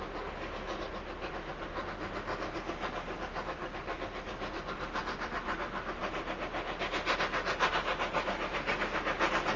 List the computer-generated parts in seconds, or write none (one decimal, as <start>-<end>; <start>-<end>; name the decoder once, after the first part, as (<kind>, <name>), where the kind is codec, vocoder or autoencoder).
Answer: none